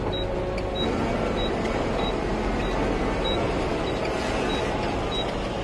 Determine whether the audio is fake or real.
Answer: real